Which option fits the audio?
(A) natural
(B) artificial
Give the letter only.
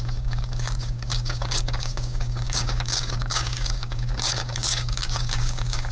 B